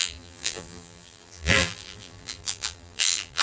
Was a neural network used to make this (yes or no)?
yes